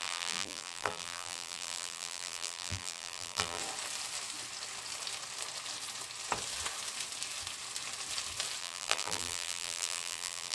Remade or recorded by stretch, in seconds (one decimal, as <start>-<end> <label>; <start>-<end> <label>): 0.0-3.6 remade; 3.6-8.6 recorded; 8.6-10.5 remade